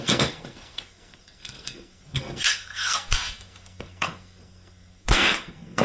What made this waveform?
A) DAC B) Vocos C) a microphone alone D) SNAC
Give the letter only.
D